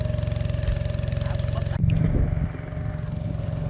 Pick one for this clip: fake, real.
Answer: real